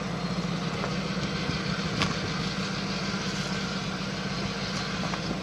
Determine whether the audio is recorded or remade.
recorded